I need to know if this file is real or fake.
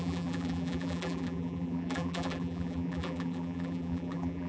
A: fake